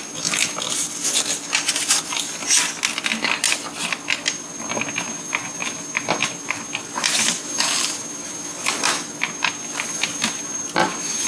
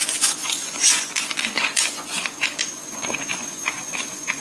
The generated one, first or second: second